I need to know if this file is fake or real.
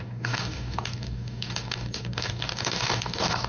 fake